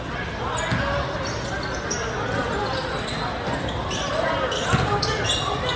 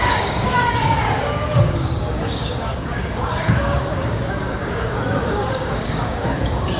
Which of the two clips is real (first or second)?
first